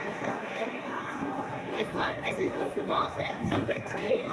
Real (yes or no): no